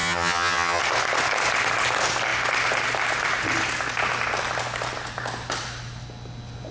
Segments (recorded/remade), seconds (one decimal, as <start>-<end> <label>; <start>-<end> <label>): 0.0-0.8 remade; 0.8-6.7 recorded